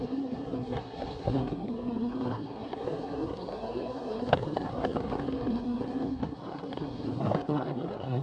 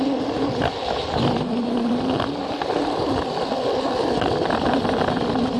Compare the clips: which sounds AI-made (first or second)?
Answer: first